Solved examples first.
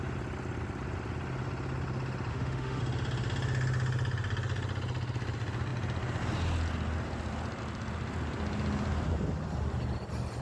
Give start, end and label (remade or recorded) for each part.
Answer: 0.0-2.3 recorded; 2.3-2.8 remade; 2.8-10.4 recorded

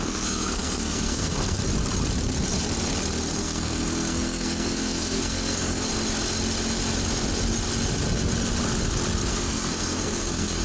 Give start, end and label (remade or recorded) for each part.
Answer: 0.0-1.6 remade; 1.6-3.4 recorded; 3.4-5.9 remade; 5.9-9.3 recorded; 9.3-10.6 remade

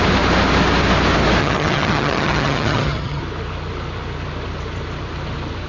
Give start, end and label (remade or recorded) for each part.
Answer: 0.0-1.4 recorded; 1.4-3.2 remade; 3.2-5.7 recorded

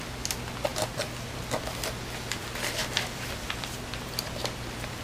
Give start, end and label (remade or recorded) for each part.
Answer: 0.0-0.7 recorded; 0.7-1.6 remade; 1.6-2.8 recorded; 2.8-5.0 remade

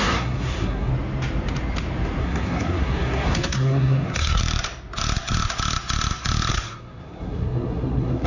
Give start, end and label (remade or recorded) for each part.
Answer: 0.0-0.9 remade; 0.9-2.2 recorded; 2.2-4.4 remade; 4.4-6.5 recorded; 6.5-8.3 remade

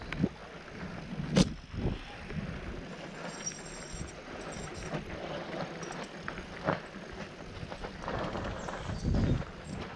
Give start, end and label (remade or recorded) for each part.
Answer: 0.0-10.0 recorded

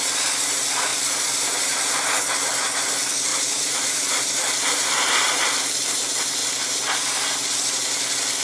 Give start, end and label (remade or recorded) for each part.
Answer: 0.0-0.9 recorded; 0.9-2.2 remade; 2.2-3.3 recorded; 3.3-5.4 remade; 5.4-6.4 recorded; 6.4-7.4 remade; 7.4-8.4 recorded